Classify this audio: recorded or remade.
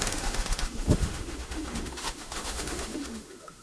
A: remade